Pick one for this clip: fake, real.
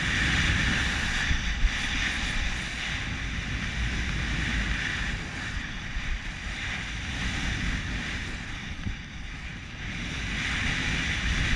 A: real